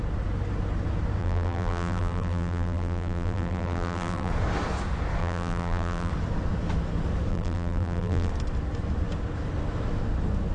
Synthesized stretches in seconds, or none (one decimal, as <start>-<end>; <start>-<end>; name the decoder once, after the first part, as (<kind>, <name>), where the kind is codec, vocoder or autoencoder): 1.2-4.3 (vocoder, BigVGAN v2); 5.2-6.1; 7.3-8.3